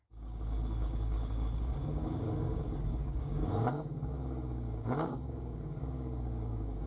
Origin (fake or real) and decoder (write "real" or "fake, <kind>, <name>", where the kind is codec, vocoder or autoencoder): fake, codec, DAC